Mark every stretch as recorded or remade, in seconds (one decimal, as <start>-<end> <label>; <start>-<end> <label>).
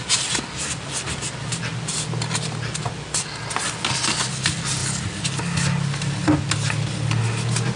0.0-7.8 recorded